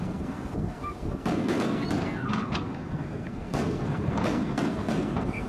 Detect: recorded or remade remade